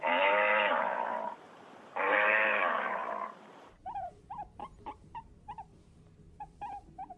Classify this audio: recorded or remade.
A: remade